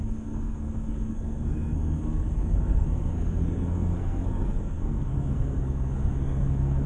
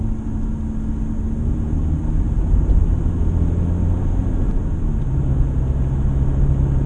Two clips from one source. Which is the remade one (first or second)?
first